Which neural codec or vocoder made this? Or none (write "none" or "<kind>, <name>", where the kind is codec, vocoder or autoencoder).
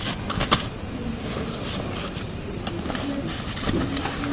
none